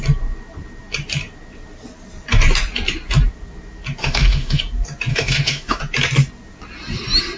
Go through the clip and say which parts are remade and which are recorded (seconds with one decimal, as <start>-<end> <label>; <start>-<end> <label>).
0.0-4.0 recorded; 4.0-4.6 remade; 4.6-5.1 recorded; 5.1-5.8 remade; 5.8-7.4 recorded